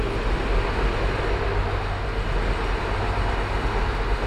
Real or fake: real